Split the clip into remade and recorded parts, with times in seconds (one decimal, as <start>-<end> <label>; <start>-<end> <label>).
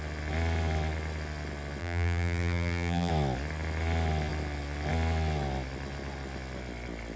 0.0-1.8 recorded; 1.8-3.1 remade; 3.1-7.2 recorded